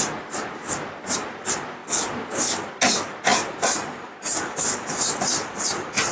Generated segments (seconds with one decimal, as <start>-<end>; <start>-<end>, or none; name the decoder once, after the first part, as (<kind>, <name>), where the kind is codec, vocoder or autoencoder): none

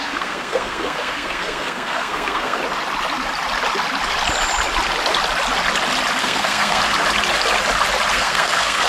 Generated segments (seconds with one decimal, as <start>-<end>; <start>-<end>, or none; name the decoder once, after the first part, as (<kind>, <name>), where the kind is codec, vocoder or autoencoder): 0.0-2.6 (codec, SNAC); 6.2-6.8; 8.1-8.9